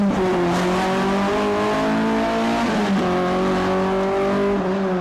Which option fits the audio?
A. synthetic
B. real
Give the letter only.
B